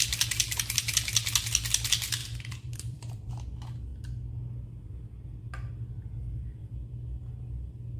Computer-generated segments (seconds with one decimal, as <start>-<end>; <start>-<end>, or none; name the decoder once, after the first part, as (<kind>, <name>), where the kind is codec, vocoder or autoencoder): 2.2-3.3 (vocoder, BigVGAN v2)